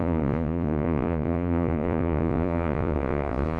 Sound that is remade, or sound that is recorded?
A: remade